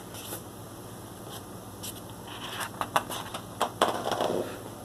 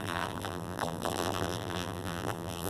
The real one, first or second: first